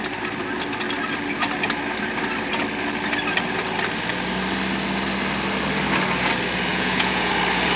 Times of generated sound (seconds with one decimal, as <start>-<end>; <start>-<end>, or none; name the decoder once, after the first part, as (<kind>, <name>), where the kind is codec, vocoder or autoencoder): 6.7-7.3 (vocoder, Vocos)